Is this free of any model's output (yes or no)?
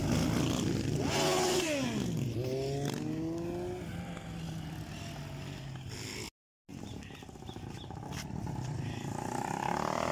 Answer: yes